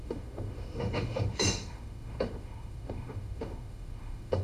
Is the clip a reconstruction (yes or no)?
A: yes